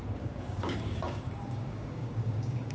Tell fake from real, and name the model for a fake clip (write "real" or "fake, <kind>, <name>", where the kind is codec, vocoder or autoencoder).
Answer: fake, codec, DAC